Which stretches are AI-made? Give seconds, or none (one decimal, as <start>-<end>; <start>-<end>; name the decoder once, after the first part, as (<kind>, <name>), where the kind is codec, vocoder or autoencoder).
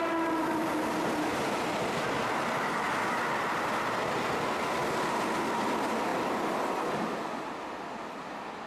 none